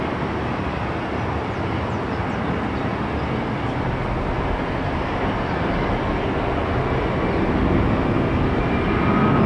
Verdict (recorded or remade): recorded